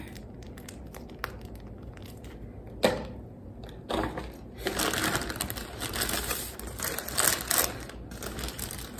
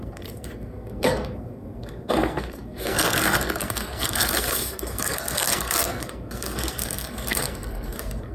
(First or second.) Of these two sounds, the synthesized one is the second